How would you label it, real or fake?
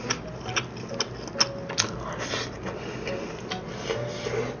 real